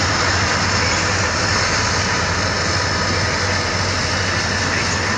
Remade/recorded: recorded